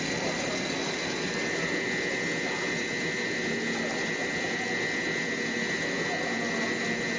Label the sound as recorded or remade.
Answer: recorded